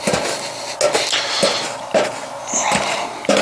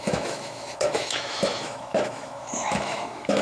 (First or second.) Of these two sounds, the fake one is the second